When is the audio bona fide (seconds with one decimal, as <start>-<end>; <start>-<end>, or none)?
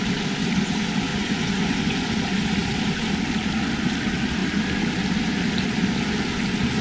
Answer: 0.0-1.1; 2.1-6.8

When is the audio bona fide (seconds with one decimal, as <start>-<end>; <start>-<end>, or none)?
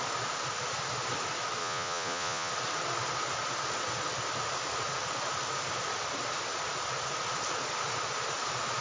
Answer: 0.0-1.6; 2.5-8.8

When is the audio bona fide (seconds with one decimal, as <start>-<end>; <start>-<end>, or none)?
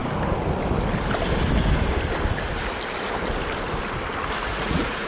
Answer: 0.0-4.4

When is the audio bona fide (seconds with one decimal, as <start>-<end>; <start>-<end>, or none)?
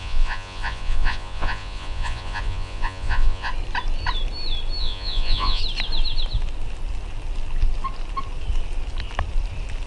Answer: 3.5-4.8; 5.6-9.9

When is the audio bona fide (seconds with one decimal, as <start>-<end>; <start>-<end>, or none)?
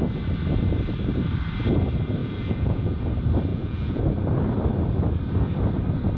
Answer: 0.0-2.2; 3.0-3.5; 4.0-6.2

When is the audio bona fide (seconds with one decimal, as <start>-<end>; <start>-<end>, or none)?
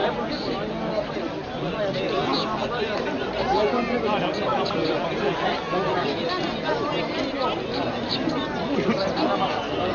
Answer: 0.0-9.9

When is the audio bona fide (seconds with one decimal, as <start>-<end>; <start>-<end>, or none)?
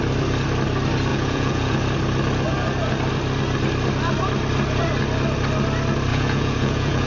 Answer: 0.0-1.1; 1.8-6.1